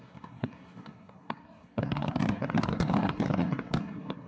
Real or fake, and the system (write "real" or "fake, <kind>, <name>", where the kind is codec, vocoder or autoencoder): fake, codec, SNAC